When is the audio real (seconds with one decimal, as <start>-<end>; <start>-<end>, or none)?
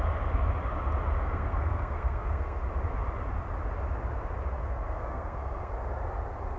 0.0-1.2; 2.6-4.5; 5.7-6.6